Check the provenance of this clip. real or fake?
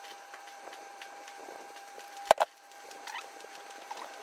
fake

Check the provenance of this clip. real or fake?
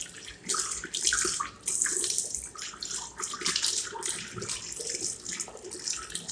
real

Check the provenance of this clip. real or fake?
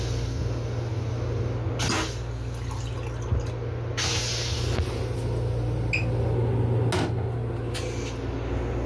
real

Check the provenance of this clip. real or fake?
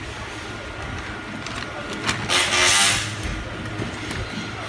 real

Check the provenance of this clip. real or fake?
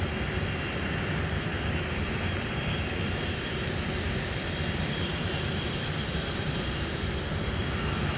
fake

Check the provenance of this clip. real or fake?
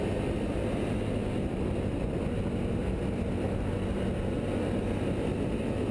real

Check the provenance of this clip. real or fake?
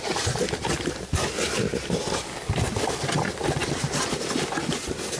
real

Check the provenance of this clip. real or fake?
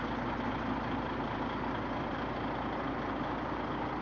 real